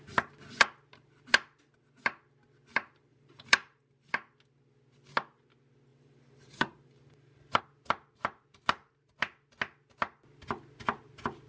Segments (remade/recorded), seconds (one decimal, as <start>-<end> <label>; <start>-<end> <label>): 0.0-3.1 recorded; 3.1-4.1 remade; 4.1-5.9 recorded; 5.9-7.6 remade; 7.6-11.5 recorded